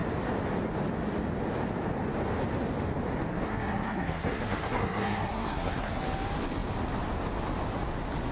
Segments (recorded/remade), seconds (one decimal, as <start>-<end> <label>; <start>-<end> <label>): 0.0-3.3 recorded; 3.3-6.0 remade; 6.0-8.3 recorded